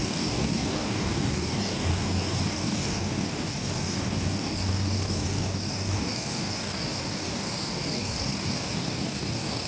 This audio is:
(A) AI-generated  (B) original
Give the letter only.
A